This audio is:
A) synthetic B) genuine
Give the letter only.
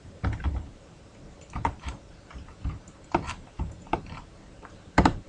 A